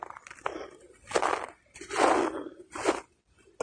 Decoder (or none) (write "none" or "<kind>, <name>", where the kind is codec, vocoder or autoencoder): none